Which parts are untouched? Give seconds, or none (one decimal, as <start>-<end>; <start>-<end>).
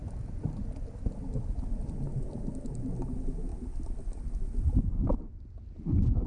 0.0-6.3